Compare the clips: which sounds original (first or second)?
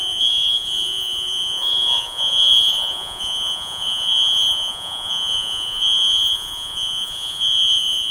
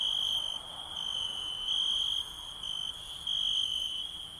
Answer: second